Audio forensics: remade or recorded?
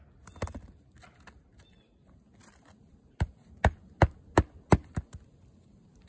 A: recorded